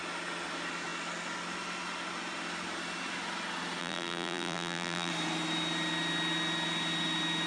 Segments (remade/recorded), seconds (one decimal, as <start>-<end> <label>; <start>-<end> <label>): 0.0-3.8 recorded; 3.8-5.1 remade; 5.1-7.5 recorded